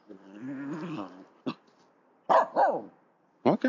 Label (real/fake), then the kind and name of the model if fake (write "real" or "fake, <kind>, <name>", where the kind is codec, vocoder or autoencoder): real